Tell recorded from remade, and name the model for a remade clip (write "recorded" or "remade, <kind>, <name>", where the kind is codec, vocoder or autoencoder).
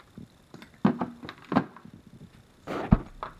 recorded